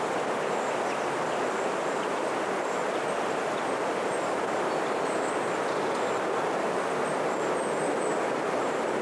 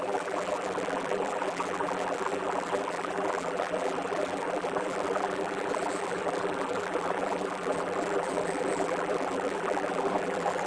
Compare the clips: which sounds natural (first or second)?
first